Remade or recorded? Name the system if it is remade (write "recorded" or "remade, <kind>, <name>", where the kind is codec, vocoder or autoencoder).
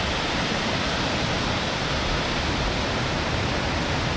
recorded